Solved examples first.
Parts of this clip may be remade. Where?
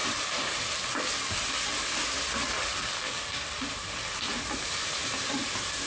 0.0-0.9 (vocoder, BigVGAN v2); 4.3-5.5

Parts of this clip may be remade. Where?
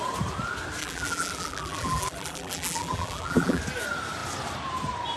0.8-3.6 (vocoder, BigVGAN v2)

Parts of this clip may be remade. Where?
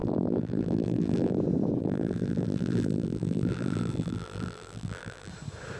0.0-1.4 (vocoder, BigVGAN v2); 1.8-5.3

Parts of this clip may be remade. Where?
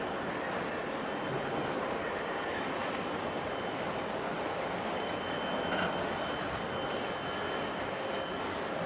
0.0-2.8 (vocoder, BigVGAN v2); 6.1-8.9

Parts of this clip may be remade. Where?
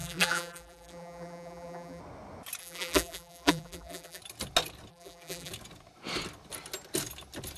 0.0-2.0 (vocoder, BigVGAN v2); 2.6-4.2; 4.9-5.5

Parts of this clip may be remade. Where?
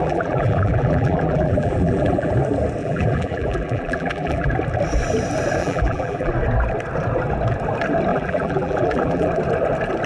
0.0-2.3 (vocoder, BigVGAN v2); 2.8-4.5; 5.6-6.3; 8.1-9.3